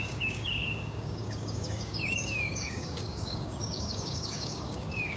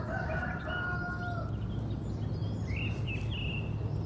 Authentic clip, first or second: second